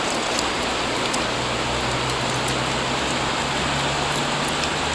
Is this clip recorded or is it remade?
recorded